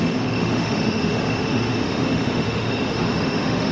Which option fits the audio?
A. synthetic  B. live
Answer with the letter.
A